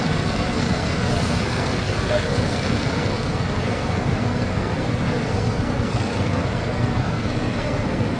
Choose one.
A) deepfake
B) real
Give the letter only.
A